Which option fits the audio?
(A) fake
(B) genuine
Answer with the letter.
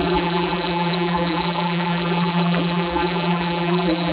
A